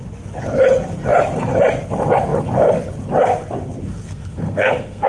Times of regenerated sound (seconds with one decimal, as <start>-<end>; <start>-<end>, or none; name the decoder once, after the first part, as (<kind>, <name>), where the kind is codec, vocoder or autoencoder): 3.9-5.1 (codec, SNAC)